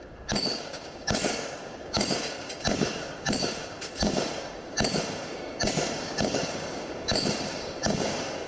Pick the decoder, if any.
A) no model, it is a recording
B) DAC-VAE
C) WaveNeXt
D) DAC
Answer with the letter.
D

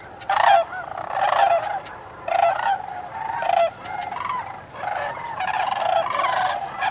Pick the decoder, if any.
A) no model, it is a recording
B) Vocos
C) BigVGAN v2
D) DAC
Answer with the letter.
C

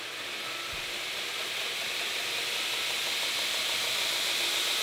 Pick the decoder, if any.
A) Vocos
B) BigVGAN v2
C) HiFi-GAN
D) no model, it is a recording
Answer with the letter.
D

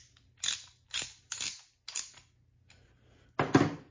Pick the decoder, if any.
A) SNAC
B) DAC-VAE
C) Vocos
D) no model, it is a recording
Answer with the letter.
D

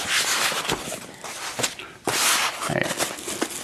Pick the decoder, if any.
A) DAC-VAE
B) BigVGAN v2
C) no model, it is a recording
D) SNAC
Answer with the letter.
C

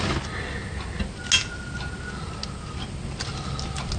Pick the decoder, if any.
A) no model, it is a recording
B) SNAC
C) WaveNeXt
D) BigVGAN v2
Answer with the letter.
A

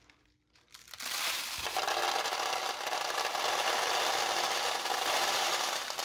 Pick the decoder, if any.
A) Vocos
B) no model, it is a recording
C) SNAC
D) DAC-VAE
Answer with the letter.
B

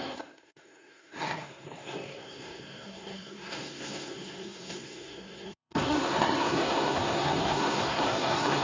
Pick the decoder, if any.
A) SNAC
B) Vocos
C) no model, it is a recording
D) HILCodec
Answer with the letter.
A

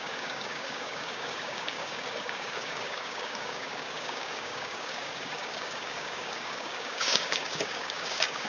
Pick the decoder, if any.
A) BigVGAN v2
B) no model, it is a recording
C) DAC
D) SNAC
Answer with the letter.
C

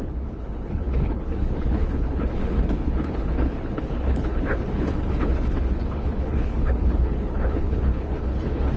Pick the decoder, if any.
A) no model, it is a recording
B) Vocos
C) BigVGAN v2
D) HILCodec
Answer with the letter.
D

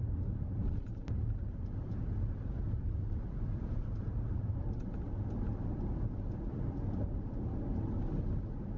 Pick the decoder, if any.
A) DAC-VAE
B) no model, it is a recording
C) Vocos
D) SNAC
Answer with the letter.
B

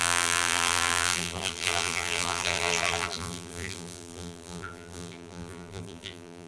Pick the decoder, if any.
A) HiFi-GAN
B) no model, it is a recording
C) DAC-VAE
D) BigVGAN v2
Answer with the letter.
D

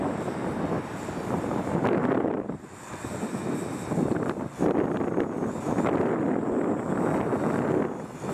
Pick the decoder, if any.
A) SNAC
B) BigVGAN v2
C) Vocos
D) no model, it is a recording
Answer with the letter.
D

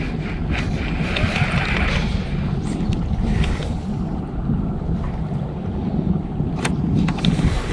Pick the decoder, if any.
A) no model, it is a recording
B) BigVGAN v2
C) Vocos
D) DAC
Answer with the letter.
A